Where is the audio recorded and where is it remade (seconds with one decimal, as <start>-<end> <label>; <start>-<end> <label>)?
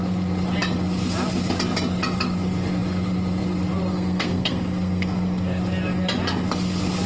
0.0-3.9 recorded; 3.9-5.6 remade; 5.6-7.1 recorded